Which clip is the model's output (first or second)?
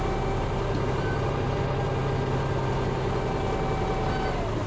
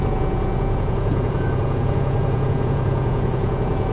second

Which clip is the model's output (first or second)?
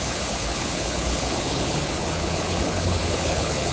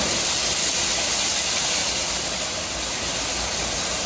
first